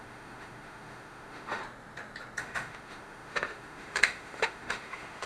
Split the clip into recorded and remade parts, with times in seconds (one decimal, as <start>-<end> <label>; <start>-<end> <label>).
0.0-1.6 remade; 1.6-2.4 recorded; 2.4-5.3 remade